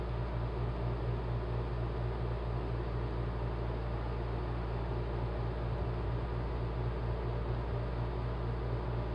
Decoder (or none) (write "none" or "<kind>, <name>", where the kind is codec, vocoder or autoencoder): none